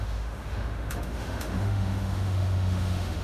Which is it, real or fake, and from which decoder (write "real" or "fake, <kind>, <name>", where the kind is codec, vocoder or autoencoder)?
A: fake, autoencoder, DAC-VAE